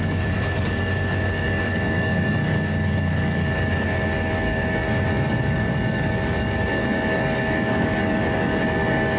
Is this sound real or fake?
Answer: fake